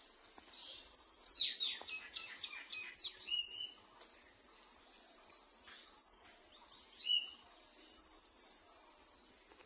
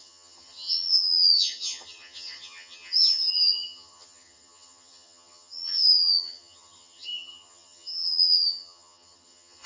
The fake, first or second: second